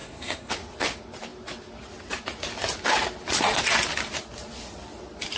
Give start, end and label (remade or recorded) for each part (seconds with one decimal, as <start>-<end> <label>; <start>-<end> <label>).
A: 0.0-0.5 remade; 0.5-5.4 recorded